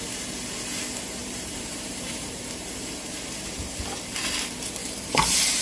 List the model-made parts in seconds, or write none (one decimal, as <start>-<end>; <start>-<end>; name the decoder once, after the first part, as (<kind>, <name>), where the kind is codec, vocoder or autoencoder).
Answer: 1.2-3.7 (vocoder, BigVGAN v2); 4.8-5.6

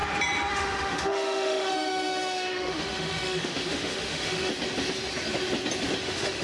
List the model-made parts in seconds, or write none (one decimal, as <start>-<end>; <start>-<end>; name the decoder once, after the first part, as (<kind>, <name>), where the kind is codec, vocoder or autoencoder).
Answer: 0.5-4.5 (autoencoder, DAC-VAE); 6.0-6.4

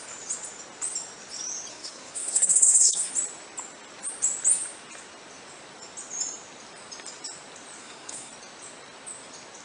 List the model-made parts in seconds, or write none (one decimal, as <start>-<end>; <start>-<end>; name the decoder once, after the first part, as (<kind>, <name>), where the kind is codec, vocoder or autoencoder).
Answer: 1.7-3.1 (codec, SNAC); 7.8-8.3